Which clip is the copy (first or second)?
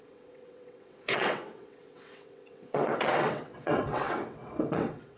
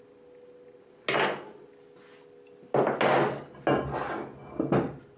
first